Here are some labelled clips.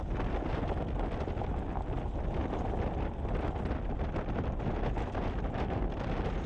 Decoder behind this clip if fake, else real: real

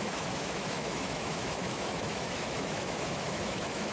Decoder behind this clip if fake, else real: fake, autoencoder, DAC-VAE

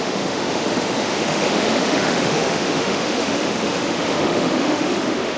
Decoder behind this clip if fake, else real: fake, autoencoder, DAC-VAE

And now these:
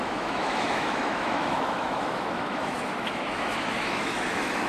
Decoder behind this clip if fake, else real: fake, autoencoder, DAC-VAE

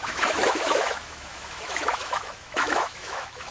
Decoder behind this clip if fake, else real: fake, autoencoder, DAC-VAE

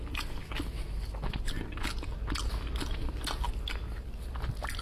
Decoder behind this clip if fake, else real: real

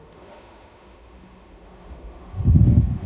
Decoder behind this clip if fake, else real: fake, autoencoder, DAC-VAE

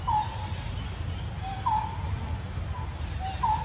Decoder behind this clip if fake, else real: real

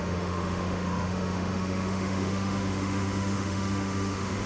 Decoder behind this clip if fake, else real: fake, autoencoder, DAC-VAE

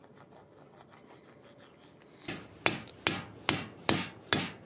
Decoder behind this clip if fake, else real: real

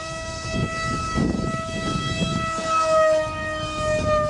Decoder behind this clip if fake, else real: fake, autoencoder, DAC-VAE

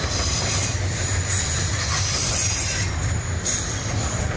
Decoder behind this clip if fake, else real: real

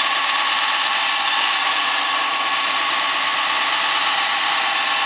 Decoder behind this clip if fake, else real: real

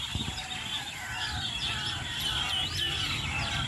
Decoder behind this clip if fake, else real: real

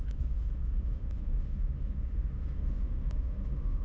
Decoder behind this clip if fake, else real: fake, autoencoder, DAC-VAE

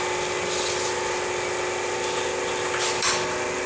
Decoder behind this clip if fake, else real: real